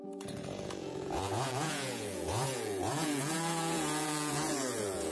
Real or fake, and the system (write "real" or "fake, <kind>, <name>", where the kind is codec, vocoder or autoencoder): fake, vocoder, Vocos